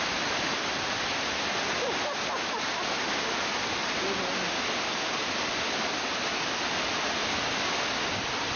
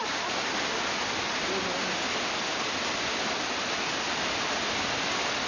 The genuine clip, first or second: first